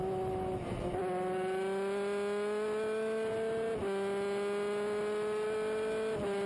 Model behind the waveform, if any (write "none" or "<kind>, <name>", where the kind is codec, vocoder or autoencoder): none